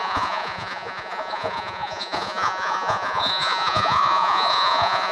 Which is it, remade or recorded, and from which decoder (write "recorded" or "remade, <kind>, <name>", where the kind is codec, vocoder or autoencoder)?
remade, vocoder, Vocos